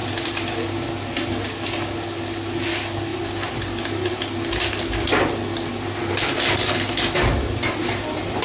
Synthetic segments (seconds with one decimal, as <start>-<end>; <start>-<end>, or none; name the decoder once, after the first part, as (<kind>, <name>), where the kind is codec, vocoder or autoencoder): none